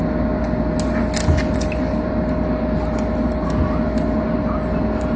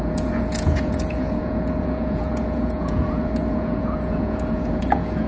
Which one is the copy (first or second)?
second